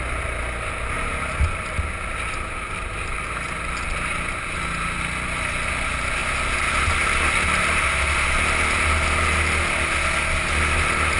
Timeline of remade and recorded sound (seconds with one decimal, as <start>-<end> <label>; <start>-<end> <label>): 0.0-11.2 recorded